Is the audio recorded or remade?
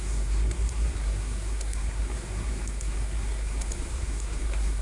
remade